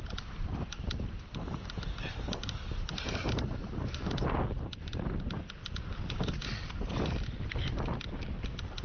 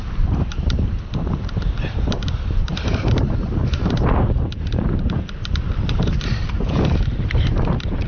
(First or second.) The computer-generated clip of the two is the second